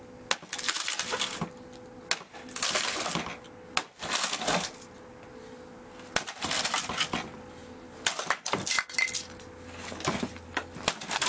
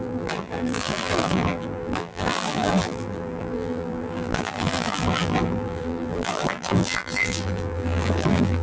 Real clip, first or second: first